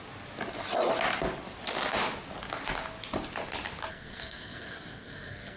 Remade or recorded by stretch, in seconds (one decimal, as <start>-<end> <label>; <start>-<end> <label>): 0.0-3.9 recorded; 3.9-5.6 remade